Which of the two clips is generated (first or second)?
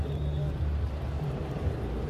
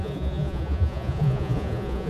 second